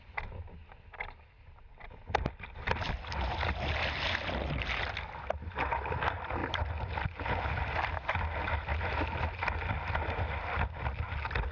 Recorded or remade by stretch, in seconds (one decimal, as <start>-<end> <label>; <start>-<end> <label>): 0.0-11.5 recorded